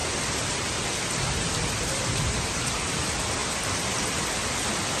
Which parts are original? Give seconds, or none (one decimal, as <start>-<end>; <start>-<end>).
none